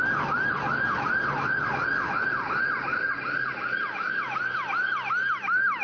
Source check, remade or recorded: recorded